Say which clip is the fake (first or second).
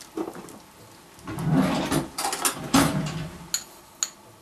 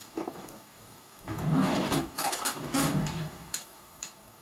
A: second